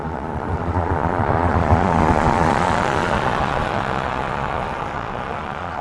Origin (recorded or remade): remade